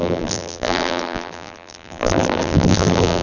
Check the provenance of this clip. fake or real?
fake